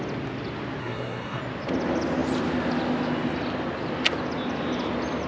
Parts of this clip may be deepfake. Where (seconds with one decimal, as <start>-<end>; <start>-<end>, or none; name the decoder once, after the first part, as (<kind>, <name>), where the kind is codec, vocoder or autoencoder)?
0.8-1.4 (codec, SNAC)